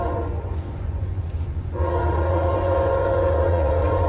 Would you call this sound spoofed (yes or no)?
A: yes